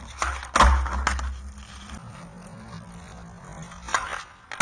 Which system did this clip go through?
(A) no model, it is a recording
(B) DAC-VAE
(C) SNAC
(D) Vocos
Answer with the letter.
A